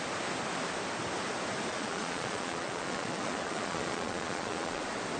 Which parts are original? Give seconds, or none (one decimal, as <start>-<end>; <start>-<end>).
0.0-1.7; 4.8-5.2